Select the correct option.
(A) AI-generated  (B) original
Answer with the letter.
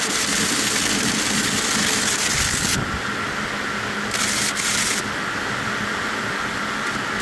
B